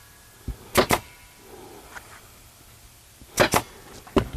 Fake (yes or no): no